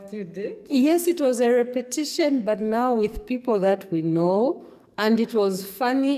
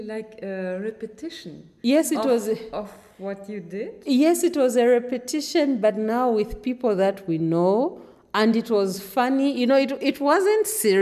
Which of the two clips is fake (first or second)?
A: first